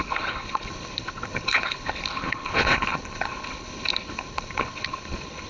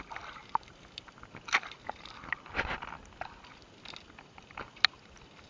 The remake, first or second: first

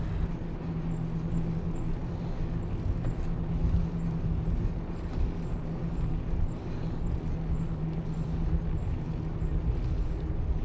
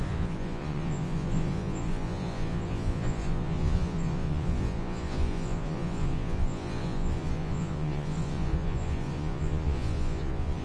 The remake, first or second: second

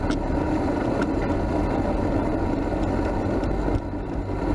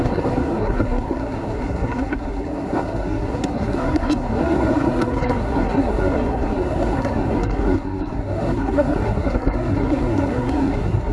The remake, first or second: second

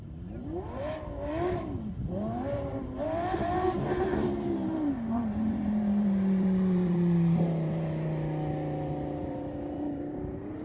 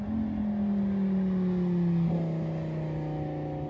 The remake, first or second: first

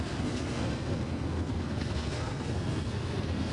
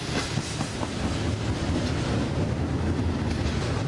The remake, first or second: first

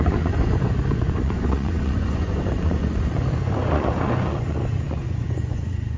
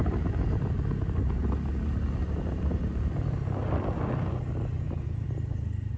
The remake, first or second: first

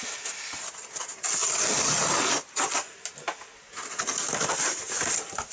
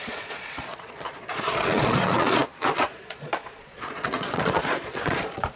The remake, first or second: second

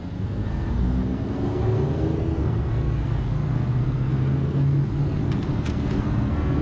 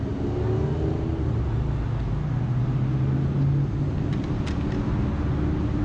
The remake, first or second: first